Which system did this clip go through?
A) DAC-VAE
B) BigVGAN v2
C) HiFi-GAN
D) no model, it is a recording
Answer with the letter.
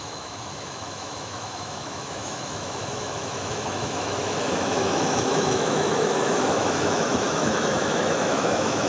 A